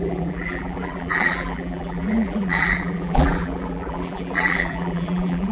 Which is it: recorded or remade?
remade